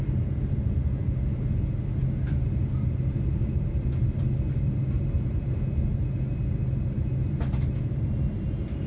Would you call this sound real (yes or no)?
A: yes